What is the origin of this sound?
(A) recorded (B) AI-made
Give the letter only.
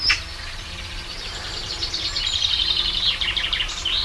B